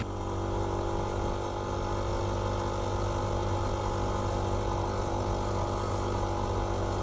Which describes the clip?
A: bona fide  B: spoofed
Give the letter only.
A